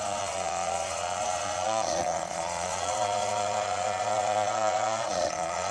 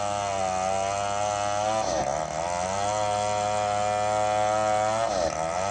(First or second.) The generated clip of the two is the first